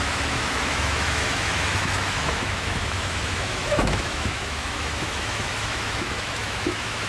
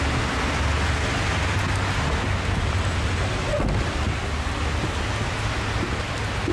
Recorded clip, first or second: second